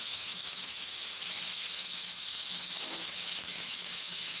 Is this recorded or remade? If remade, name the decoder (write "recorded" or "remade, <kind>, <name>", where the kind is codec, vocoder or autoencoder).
remade, autoencoder, DAC-VAE